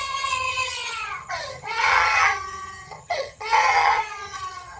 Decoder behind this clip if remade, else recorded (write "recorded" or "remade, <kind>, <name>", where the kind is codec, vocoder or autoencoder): remade, vocoder, HiFi-GAN